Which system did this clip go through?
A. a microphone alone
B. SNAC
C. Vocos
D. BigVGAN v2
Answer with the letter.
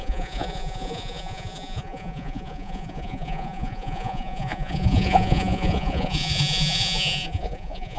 C